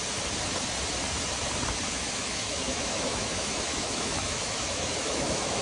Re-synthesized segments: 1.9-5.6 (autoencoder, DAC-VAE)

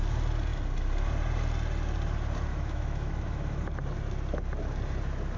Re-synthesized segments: 2.5-3.6 (autoencoder, DAC-VAE)

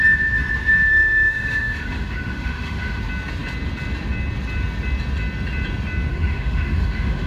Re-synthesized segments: 0.9-3.0 (autoencoder, DAC-VAE); 6.1-7.3

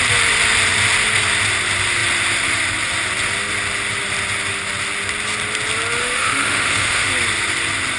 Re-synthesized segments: 6.0-7.1 (autoencoder, DAC-VAE)

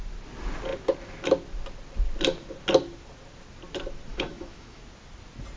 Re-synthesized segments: 4.1-4.8 (autoencoder, DAC-VAE)

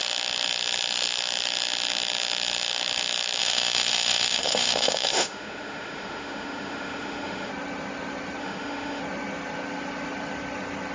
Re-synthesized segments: 3.4-7.5 (autoencoder, DAC-VAE); 8.4-9.0

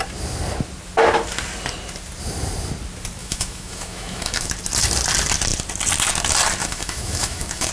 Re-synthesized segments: 3.2-4.5 (autoencoder, DAC-VAE); 6.6-7.7